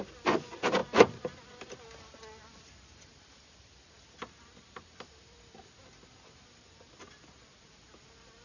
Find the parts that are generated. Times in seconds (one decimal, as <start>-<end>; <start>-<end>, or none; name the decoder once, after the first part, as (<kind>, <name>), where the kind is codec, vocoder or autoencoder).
none